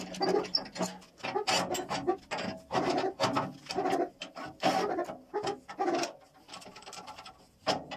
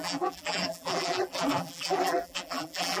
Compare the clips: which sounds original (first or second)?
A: first